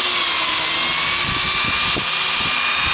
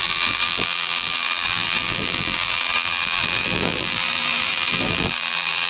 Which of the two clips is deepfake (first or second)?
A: second